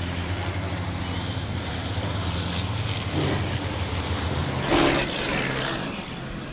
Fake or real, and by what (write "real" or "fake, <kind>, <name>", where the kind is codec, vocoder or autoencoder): real